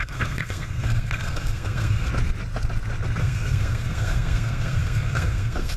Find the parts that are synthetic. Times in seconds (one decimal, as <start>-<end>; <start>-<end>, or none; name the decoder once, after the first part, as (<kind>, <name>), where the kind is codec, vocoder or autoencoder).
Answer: 0.0-2.1 (codec, SNAC); 3.2-5.8